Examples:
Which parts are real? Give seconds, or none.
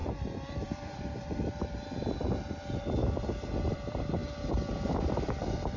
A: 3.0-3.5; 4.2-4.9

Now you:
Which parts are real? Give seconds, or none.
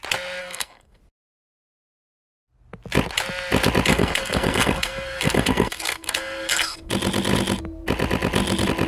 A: 0.0-0.4; 1.0-3.9; 6.9-8.9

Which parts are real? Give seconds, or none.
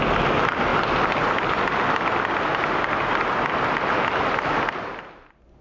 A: 0.0-5.6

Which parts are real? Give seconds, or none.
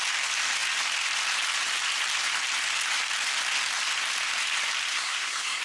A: 0.0-4.9